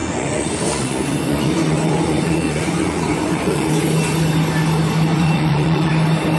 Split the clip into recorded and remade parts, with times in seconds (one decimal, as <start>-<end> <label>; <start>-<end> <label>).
0.0-3.8 remade; 3.8-5.1 recorded; 5.1-5.9 remade; 5.9-6.4 recorded